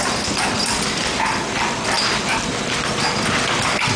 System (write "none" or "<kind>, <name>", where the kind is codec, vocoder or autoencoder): none